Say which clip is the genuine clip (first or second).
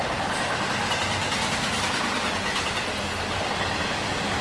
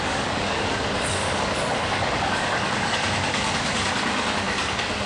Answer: first